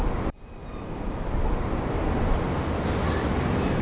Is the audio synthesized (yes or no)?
no